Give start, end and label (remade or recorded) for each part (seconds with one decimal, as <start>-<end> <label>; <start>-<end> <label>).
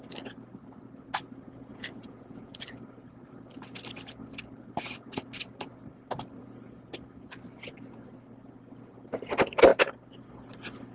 0.0-1.7 recorded; 1.7-2.6 remade; 2.6-10.9 recorded